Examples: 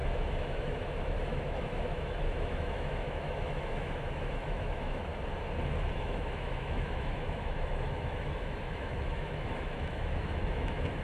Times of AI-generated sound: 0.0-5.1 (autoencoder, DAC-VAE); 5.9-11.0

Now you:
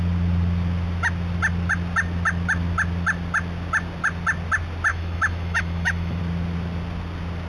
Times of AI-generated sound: 4.9-6.2 (autoencoder, DAC-VAE)